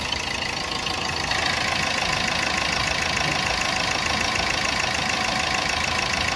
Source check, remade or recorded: recorded